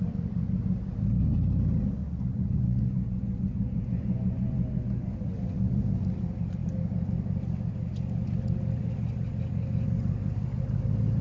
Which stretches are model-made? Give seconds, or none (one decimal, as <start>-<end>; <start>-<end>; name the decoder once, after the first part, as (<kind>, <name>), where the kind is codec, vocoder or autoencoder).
2.0-5.8 (vocoder, Vocos)